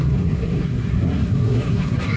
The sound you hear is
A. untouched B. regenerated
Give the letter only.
B